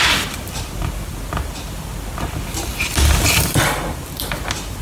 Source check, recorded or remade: recorded